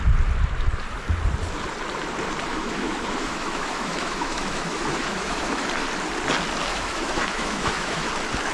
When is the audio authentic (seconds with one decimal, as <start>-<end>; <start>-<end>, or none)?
0.0-2.5; 5.6-6.7; 8.1-8.5